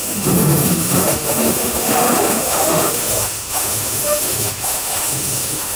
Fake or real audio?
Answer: fake